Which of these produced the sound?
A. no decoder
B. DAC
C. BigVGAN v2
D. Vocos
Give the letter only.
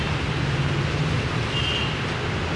A